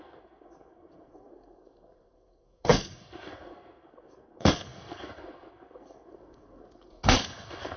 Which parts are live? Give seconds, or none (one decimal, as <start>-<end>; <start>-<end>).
none